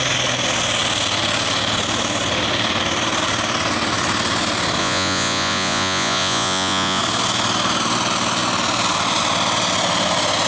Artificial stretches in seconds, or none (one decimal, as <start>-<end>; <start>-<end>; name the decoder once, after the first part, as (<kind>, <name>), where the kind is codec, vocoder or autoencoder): 4.8-7.0 (vocoder, Vocos)